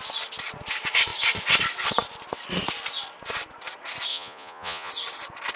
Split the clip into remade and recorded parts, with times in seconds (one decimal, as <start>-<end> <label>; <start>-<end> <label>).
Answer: 0.0-4.1 recorded; 4.1-4.9 remade; 4.9-5.6 recorded